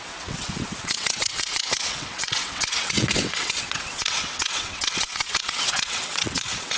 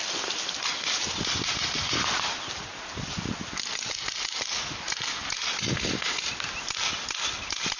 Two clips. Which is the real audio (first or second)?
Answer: second